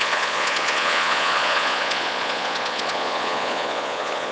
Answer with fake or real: fake